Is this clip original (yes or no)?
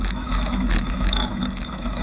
no